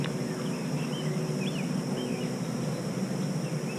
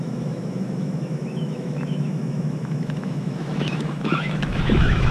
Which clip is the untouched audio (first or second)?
first